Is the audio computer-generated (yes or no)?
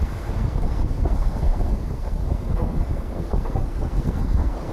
yes